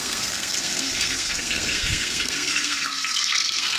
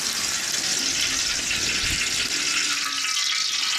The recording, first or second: second